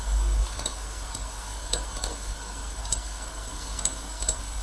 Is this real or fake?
fake